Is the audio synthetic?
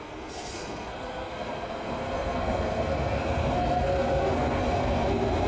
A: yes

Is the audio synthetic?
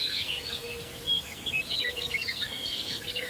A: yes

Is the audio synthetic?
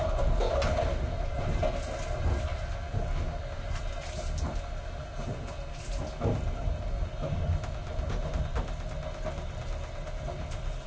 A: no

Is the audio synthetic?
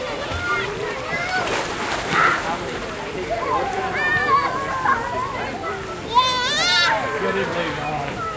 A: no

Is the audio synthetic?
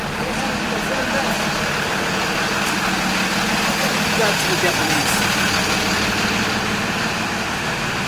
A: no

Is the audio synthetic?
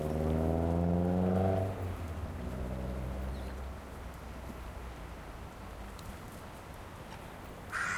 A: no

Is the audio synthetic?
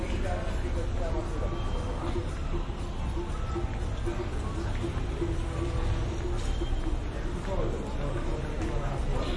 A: no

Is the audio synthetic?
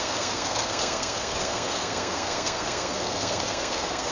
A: yes